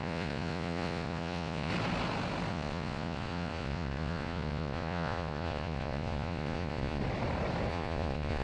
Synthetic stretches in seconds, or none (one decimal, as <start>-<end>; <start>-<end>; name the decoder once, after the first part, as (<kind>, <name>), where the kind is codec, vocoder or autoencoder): 0.0-1.7 (vocoder, Vocos); 2.5-7.0; 7.7-8.4